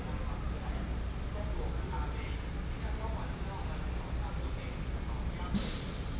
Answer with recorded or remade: recorded